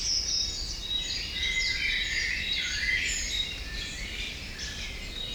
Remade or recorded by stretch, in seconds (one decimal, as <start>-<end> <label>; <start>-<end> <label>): 0.0-5.3 recorded